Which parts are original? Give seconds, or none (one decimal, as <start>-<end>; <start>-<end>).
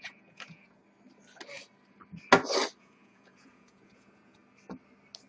0.8-2.8; 4.4-5.3